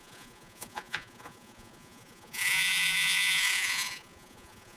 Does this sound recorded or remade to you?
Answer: remade